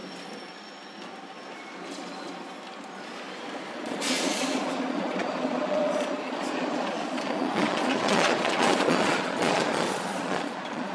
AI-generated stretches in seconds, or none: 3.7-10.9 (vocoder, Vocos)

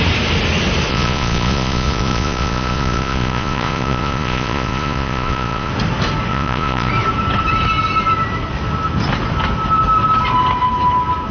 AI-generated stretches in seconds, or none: 0.9-5.7 (vocoder, Vocos); 6.3-6.9

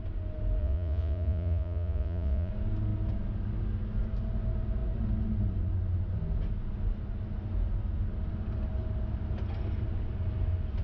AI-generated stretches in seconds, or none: 0.6-2.5 (vocoder, Vocos)

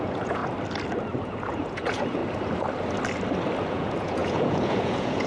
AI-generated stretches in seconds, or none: 0.0-0.4 (vocoder, Vocos); 1.2-2.2; 3.7-5.3

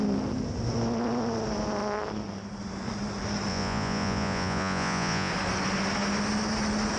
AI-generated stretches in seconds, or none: 3.5-5.3 (vocoder, Vocos)

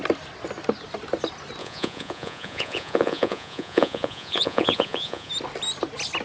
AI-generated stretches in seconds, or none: 1.6-5.3 (vocoder, Vocos)

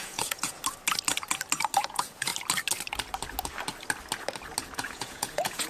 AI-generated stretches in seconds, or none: 0.0-0.6 (vocoder, Vocos); 1.8-2.3; 4.6-5.7